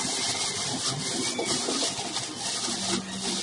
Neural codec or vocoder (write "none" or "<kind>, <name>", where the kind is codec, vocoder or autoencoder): none